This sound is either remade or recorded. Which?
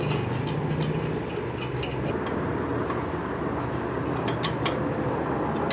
recorded